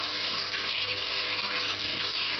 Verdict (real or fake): fake